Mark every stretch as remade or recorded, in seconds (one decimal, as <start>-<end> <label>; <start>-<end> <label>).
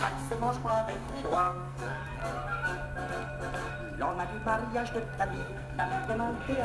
0.0-2.2 remade; 2.2-5.2 recorded; 5.2-6.6 remade